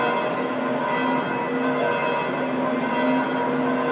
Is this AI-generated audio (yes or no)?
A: no